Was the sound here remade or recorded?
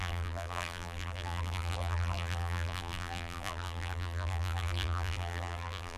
remade